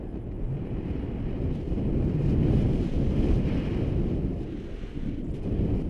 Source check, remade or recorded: recorded